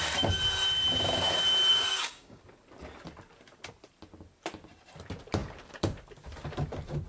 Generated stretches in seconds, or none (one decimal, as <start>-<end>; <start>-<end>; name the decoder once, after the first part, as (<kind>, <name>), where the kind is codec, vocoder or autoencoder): 1.7-2.4 (codec, DAC)